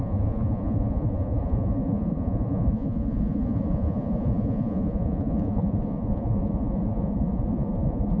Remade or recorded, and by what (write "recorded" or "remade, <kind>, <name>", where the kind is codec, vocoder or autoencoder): remade, vocoder, Vocos